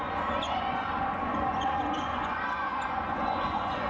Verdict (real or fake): fake